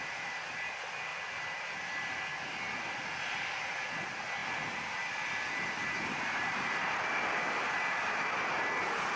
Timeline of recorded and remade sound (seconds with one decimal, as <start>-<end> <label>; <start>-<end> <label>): 0.0-9.2 recorded